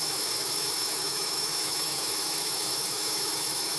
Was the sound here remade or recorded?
remade